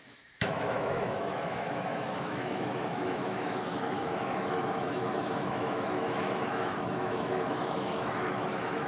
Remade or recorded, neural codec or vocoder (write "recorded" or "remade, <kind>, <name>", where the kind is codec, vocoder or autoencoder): remade, autoencoder, DAC-VAE